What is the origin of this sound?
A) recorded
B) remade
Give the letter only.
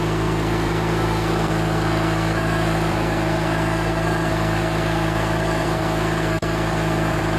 B